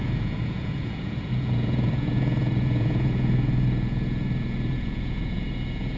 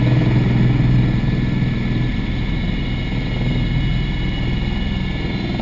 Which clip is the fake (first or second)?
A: first